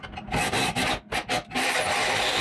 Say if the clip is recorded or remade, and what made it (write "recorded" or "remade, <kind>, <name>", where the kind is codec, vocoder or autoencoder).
recorded